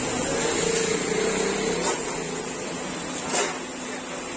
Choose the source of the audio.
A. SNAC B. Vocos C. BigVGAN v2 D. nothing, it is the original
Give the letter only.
D